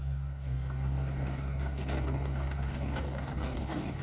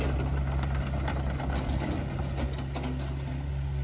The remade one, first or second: first